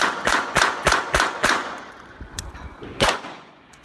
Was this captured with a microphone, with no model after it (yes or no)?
no